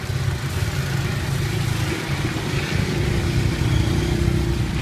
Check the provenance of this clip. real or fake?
real